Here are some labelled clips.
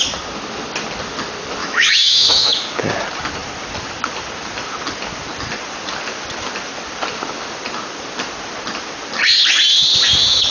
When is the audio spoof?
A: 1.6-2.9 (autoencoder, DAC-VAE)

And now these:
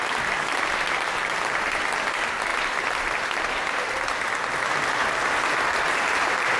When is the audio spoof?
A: 0.0-2.5 (vocoder, BigVGAN v2); 5.6-6.6

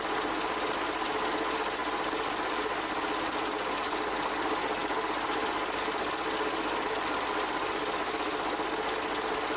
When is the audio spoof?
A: none

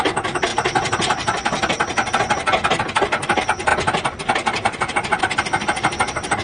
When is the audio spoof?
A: none

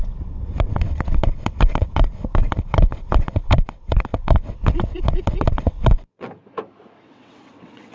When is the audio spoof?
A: 0.0-6.4 (vocoder, WaveNeXt); 7.0-7.9

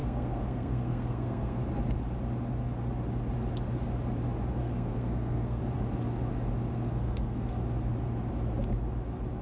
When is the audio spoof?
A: 0.0-1.6 (codec, SNAC); 4.6-5.6; 6.7-7.6

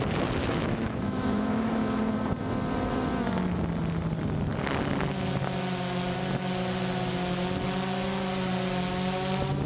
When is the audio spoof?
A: 0.4-2.0 (autoencoder, DAC-VAE)

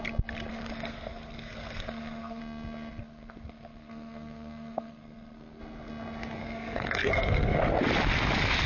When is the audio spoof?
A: 0.5-2.4 (codec, SNAC); 3.0-5.6; 6.4-7.6